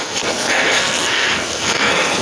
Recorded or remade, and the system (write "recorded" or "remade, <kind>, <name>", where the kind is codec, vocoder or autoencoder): remade, codec, SNAC